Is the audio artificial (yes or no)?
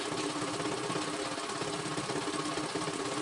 no